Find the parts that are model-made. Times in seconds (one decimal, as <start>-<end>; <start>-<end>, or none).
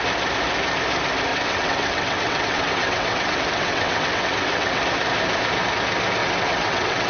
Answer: 1.3-4.8; 6.2-7.1